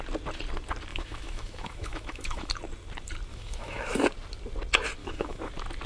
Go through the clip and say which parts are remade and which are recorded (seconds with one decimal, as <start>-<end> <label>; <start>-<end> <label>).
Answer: 0.0-0.9 recorded; 0.9-2.5 remade; 2.5-3.3 recorded; 3.3-4.0 remade; 4.0-5.0 recorded; 5.0-5.5 remade; 5.5-5.9 recorded